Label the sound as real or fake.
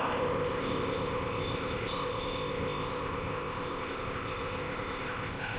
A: fake